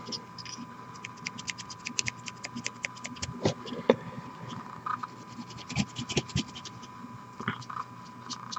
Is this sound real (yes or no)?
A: yes